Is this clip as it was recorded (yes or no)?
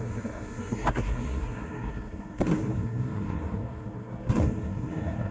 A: no